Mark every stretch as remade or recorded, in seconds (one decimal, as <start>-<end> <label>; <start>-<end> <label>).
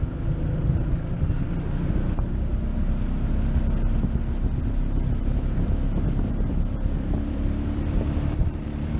0.0-4.6 recorded; 4.6-9.0 remade